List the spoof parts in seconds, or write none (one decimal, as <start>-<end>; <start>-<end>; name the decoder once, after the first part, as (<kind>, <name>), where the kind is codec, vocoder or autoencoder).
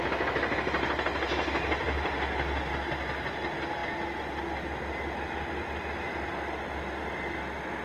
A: none